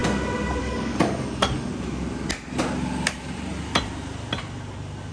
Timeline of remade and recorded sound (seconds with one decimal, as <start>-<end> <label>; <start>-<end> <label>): 0.0-0.6 recorded; 0.6-1.7 remade; 1.7-5.1 recorded